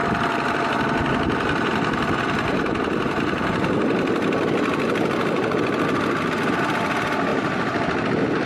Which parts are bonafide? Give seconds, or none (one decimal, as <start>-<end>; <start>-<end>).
0.0-8.5

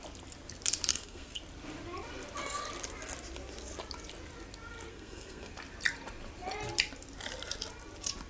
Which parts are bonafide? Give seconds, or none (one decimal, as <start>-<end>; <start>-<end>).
0.0-0.9; 1.4-4.9; 5.5-8.3

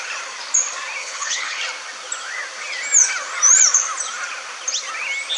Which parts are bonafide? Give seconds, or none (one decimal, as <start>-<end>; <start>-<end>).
0.0-1.0; 1.6-5.4

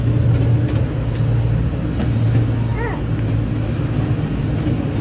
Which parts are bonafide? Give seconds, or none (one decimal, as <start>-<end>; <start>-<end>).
0.0-5.0

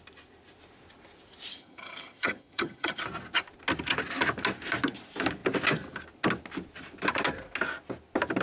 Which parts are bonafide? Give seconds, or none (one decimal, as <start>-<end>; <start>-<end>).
0.0-1.5; 3.0-8.4

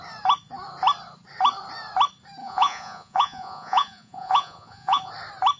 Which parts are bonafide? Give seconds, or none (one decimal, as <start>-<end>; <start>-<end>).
0.0-2.4; 5.1-5.6

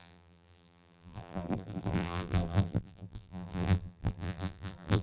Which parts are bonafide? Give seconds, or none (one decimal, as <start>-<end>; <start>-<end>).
none

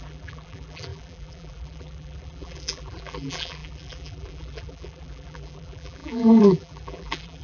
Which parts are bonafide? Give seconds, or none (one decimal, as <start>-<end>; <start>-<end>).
none